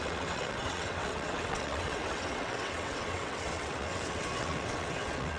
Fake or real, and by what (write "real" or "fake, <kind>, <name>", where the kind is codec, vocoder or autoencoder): fake, vocoder, WaveNeXt